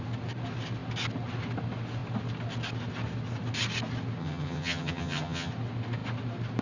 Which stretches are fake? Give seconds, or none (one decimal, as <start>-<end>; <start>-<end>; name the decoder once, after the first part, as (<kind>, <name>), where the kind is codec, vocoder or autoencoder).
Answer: 4.2-5.5 (vocoder, HiFi-GAN)